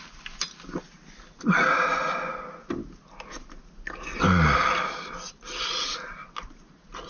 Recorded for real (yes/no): yes